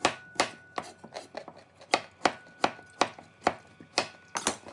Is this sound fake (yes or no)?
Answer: no